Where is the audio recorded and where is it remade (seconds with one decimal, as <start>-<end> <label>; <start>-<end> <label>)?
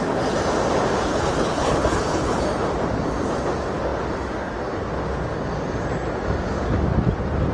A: 0.0-1.1 recorded; 1.1-2.4 remade; 2.4-7.5 recorded